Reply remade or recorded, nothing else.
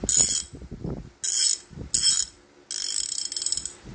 recorded